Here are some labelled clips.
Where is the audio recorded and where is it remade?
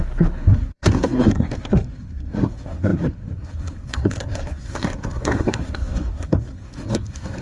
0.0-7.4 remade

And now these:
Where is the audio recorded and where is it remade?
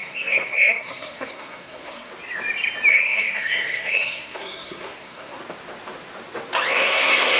0.0-2.1 remade; 2.1-2.9 recorded; 2.9-5.4 remade; 5.4-6.7 recorded; 6.7-7.4 remade